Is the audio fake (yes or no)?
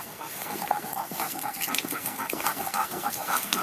yes